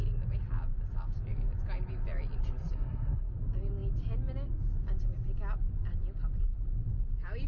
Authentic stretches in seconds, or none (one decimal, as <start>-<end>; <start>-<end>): 0.0-2.4; 3.3-7.5